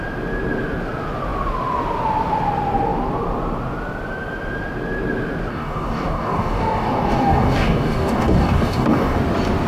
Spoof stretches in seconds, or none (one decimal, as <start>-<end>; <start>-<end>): 5.5-9.2